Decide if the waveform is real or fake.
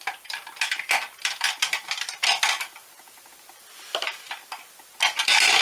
real